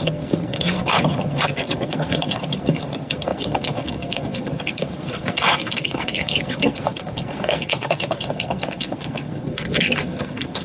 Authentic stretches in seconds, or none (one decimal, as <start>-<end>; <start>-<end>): none